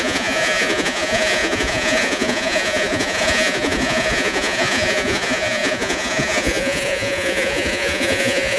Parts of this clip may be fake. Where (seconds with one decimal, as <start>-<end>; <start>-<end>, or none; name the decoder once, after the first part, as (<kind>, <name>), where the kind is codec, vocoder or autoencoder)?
0.0-8.6 (vocoder, Vocos)